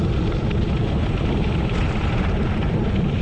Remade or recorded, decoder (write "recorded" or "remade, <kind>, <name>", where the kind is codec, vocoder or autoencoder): recorded